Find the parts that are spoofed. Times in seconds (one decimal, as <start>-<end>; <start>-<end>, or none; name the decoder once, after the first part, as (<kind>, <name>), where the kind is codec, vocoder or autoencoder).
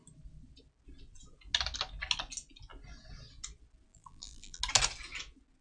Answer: 3.9-4.6 (vocoder, BigVGAN v2)